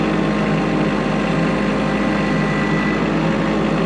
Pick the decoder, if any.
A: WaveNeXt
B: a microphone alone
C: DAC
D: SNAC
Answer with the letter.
B